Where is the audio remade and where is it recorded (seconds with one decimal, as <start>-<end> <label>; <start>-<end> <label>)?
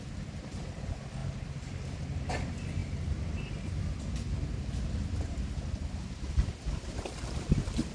0.0-7.9 recorded